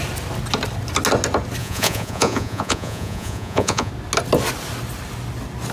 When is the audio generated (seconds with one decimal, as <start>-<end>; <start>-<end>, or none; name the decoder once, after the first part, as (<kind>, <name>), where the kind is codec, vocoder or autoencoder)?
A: 1.6-3.9 (vocoder, Vocos)